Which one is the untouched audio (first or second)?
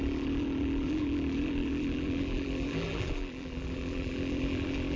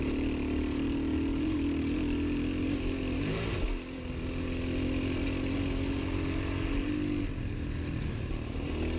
second